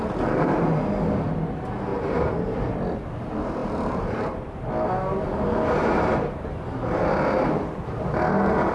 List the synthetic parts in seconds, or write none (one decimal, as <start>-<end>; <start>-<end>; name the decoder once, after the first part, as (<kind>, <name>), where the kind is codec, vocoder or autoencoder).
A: 1.9-2.7 (vocoder, BigVGAN v2); 3.6-4.6; 5.8-8.0